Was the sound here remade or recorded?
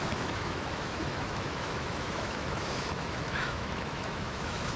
remade